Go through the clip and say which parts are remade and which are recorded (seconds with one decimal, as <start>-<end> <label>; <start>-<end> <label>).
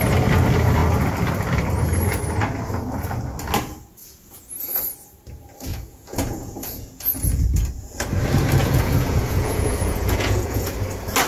0.0-4.0 recorded; 4.0-4.8 remade; 4.8-5.7 recorded; 5.7-7.6 remade; 7.6-8.6 recorded; 8.6-10.7 remade; 10.7-11.3 recorded